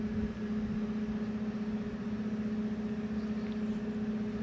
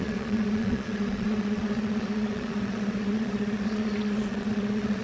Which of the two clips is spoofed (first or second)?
second